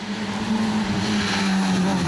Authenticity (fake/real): real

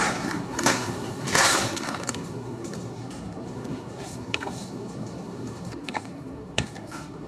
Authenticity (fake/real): fake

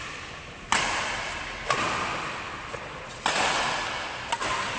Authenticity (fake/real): real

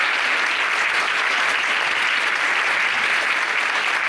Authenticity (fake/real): real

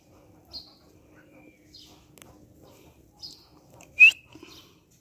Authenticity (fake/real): real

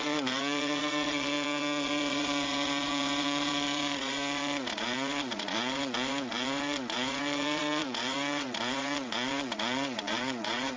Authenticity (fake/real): fake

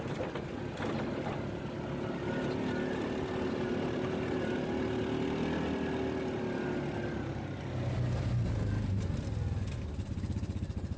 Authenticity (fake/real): real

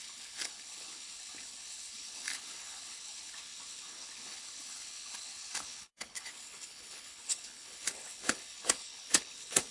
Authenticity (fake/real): fake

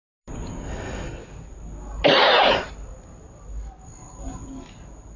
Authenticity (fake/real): real